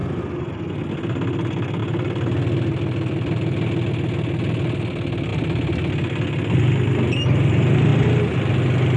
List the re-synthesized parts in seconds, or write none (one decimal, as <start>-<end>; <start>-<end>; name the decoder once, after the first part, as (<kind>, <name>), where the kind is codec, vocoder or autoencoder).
1.8-3.9 (vocoder, BigVGAN v2); 5.3-5.9; 7.9-8.5